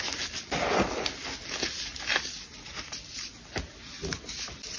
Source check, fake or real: real